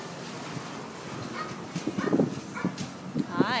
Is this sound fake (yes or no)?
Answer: no